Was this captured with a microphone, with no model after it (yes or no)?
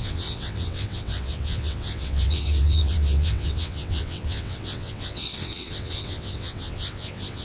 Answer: no